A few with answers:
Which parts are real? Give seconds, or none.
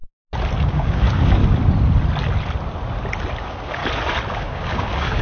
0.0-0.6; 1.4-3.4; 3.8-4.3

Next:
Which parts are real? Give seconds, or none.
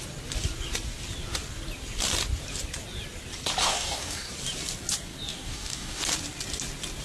0.0-3.6; 4.3-5.3; 6.0-7.0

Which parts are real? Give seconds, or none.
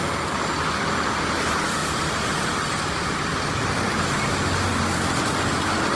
0.0-6.0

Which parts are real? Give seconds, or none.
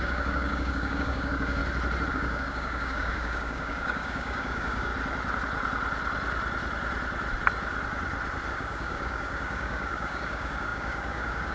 1.6-2.1; 4.9-8.5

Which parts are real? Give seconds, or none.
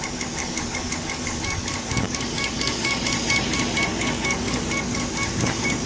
0.0-0.4; 3.0-3.9; 5.0-5.9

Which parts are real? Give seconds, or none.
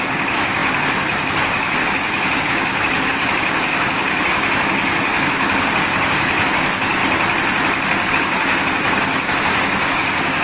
7.0-8.1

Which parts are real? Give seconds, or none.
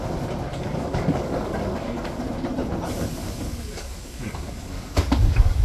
0.0-0.5; 2.2-3.2